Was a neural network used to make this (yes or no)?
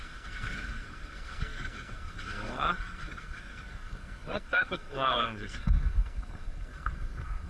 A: yes